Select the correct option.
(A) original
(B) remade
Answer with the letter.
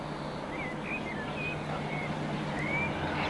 A